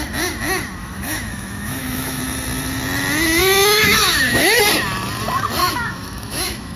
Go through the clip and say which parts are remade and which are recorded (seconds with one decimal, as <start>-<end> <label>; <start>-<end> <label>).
0.0-0.8 recorded; 0.8-2.2 remade; 2.2-3.4 recorded; 3.4-4.6 remade; 4.6-5.6 recorded; 5.6-6.8 remade